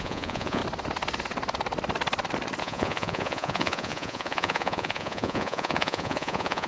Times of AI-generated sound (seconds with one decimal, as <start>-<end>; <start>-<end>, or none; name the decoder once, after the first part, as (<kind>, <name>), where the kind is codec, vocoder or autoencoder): 0.0-0.6 (vocoder, Vocos); 2.6-6.7